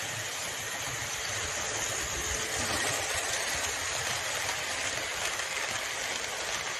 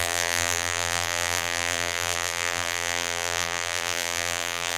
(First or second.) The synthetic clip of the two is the second